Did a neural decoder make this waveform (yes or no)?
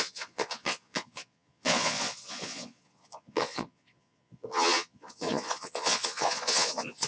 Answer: yes